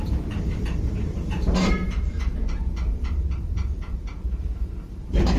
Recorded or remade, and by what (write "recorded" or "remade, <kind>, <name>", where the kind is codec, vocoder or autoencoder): remade, vocoder, BigVGAN v2